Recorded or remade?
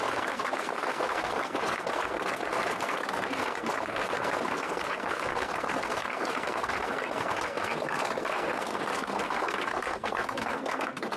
remade